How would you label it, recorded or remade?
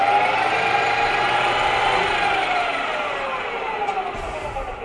recorded